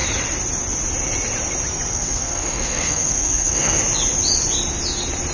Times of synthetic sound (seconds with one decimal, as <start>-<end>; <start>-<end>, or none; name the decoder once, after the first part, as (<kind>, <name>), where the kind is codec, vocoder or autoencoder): 1.9-3.8 (codec, SNAC)